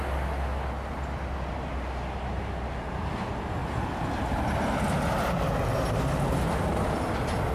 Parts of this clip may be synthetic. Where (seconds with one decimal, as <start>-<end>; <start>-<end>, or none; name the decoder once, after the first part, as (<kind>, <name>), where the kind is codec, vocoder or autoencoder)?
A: 3.6-4.1 (vocoder, BigVGAN v2)